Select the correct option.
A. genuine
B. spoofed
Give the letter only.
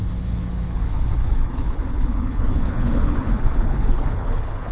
B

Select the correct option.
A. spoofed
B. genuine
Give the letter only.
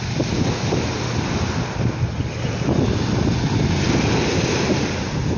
B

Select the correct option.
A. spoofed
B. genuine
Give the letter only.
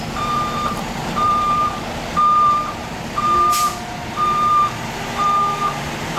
A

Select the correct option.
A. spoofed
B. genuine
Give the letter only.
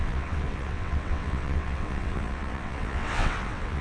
A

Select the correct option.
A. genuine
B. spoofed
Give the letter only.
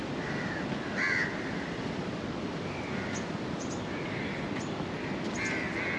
A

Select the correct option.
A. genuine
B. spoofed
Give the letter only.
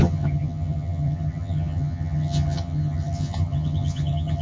B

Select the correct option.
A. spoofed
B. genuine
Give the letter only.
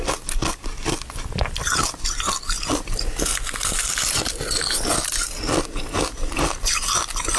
B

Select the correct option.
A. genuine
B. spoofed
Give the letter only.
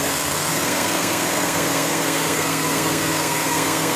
B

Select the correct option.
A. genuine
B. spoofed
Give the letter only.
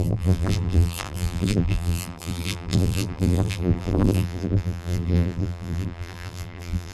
B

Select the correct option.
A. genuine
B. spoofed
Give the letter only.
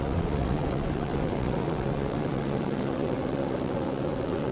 B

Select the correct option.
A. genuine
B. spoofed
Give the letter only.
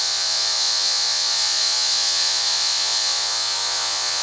B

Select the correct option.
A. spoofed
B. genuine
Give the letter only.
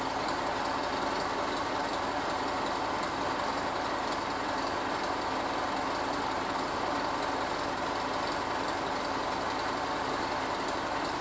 B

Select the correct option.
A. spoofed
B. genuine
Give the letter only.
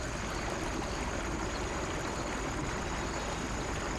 B